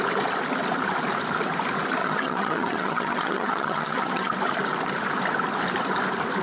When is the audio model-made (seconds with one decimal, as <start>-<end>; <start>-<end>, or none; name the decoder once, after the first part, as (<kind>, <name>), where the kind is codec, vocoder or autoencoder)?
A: 2.0-4.3 (vocoder, HiFi-GAN)